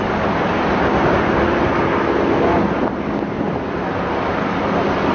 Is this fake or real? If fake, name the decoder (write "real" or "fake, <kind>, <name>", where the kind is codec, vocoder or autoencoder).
real